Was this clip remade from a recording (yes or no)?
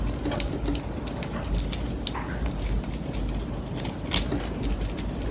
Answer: no